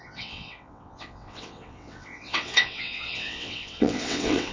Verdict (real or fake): fake